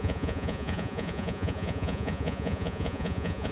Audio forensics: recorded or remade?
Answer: remade